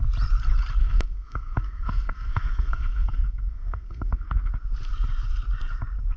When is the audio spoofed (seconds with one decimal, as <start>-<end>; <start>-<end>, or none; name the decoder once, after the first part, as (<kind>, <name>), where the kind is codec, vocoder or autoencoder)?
0.8-4.5 (codec, SNAC)

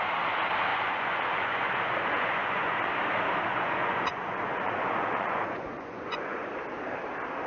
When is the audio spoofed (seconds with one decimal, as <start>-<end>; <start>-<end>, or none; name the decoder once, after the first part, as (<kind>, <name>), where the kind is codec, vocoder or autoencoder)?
0.7-2.9 (vocoder, Vocos); 3.5-6.5

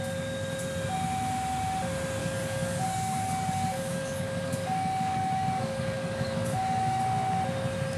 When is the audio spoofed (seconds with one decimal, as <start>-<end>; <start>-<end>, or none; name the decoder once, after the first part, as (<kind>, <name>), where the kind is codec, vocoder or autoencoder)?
2.2-7.0 (codec, DAC)

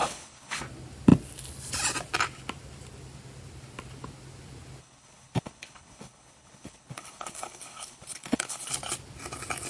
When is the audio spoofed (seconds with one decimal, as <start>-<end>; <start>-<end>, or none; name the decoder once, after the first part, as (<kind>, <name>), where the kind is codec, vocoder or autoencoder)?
0.0-0.6 (codec, HILCodec); 4.8-8.7

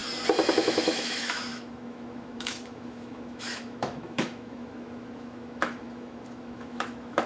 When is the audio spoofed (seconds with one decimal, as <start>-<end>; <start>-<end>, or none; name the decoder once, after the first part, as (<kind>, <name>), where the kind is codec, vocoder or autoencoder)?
0.5-7.3 (autoencoder, DAC-VAE)

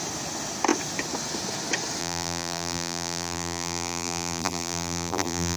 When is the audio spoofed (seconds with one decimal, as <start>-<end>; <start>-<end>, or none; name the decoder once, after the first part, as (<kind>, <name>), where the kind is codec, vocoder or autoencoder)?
2.0-5.6 (vocoder, BigVGAN v2)

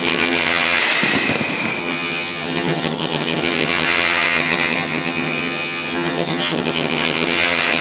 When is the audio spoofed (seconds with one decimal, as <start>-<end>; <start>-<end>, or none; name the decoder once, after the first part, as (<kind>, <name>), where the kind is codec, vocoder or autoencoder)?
0.0-0.8 (vocoder, HiFi-GAN); 1.8-7.8

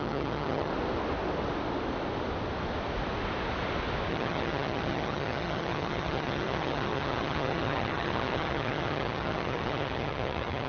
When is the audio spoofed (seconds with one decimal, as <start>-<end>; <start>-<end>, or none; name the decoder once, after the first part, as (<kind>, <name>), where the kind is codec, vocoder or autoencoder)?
0.0-0.7 (vocoder, HiFi-GAN); 4.1-10.7